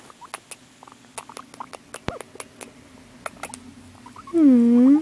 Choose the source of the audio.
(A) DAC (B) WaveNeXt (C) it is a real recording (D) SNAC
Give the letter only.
C